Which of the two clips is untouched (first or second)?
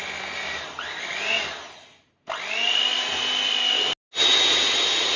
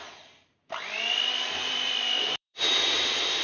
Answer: first